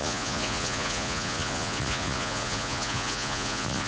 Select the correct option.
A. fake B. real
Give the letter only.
A